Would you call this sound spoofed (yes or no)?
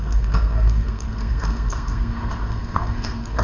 yes